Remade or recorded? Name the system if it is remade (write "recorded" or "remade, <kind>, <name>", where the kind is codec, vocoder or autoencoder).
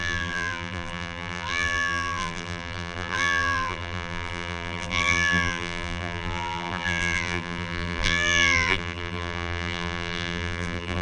remade, vocoder, BigVGAN v2